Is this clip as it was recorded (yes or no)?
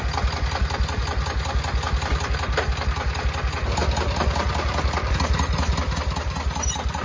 yes